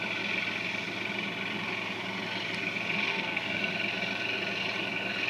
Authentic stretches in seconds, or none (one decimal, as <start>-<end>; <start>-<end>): 0.0-3.1; 3.7-5.3